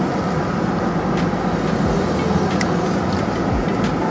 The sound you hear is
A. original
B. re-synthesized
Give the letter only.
A